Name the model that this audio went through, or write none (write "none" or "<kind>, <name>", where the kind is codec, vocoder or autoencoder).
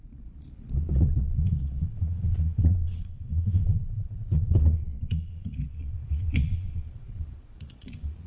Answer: vocoder, Vocos